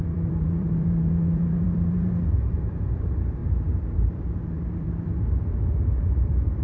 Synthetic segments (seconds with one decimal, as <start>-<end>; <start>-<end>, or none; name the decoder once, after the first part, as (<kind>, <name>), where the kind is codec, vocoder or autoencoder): 0.0-6.6 (vocoder, BigVGAN v2)